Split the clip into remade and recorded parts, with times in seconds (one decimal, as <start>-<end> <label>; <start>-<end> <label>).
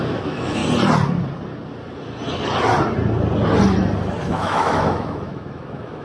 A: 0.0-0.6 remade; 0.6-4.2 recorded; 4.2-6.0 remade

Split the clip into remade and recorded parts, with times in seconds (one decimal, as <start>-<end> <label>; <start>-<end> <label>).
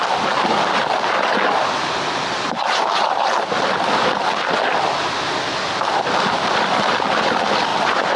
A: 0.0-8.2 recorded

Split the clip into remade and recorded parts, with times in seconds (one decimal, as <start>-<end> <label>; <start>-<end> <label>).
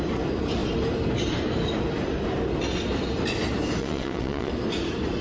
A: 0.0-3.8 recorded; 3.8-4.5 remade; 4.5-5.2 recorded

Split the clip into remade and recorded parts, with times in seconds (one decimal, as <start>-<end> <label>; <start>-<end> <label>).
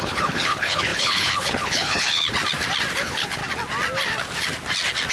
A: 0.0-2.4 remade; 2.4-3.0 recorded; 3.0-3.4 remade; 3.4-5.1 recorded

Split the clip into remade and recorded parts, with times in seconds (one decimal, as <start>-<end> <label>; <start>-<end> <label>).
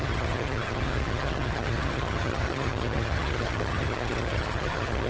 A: 0.0-5.1 remade